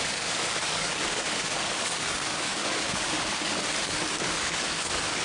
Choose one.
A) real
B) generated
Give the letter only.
B